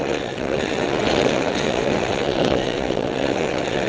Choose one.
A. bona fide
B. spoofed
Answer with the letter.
B